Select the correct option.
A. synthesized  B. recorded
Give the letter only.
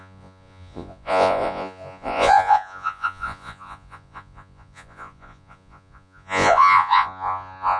A